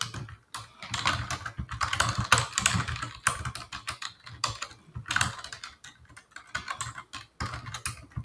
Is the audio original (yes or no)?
yes